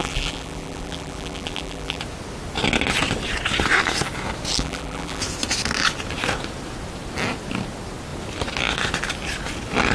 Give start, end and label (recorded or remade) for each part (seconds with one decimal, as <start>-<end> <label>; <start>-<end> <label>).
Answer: 0.0-2.0 remade; 2.0-4.5 recorded; 4.5-5.2 remade; 5.2-9.9 recorded